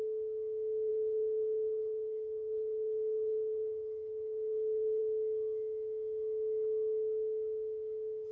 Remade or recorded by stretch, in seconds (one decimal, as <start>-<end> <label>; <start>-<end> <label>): 0.0-0.9 recorded; 0.9-5.0 remade; 5.0-8.3 recorded